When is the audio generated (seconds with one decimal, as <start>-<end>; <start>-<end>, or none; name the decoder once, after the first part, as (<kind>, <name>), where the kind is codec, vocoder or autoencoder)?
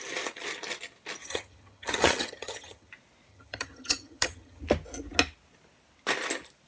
1.2-2.9 (vocoder, HiFi-GAN); 3.3-4.6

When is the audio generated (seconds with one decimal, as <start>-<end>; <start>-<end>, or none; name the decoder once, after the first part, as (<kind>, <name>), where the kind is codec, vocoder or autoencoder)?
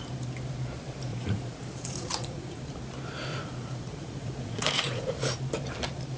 1.1-2.6 (vocoder, Vocos); 3.3-5.4